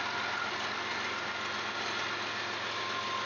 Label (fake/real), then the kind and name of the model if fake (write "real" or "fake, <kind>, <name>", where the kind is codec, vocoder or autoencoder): real